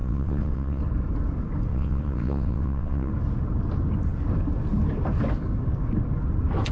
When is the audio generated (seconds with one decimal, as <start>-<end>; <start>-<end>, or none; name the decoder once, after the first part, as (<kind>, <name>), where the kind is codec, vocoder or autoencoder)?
0.0-0.8 (vocoder, WaveNeXt); 1.7-3.1